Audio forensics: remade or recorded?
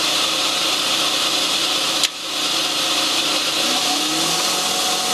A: recorded